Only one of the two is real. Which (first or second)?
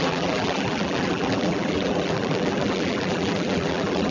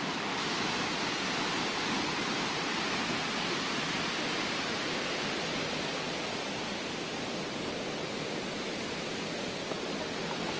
second